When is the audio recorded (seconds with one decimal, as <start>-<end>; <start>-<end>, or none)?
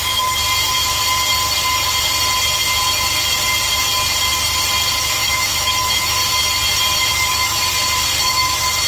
0.4-5.0; 6.2-7.1; 7.7-8.2